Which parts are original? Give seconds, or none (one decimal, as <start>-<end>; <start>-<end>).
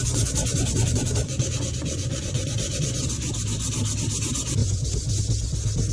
3.3-4.6; 5.2-5.9